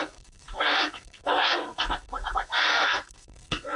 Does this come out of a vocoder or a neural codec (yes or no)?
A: yes